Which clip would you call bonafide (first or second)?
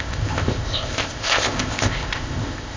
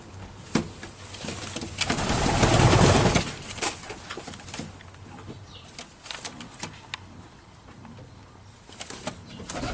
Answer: second